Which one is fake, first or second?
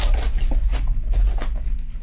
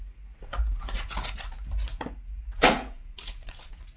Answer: second